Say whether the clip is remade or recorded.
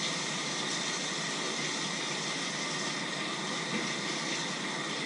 recorded